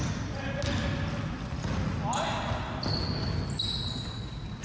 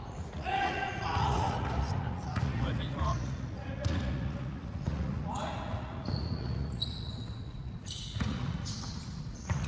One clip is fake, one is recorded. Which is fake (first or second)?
second